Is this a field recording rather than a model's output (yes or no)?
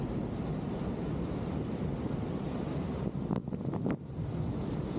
yes